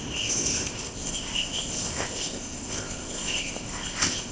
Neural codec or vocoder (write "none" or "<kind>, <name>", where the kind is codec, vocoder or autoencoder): codec, ZipCodec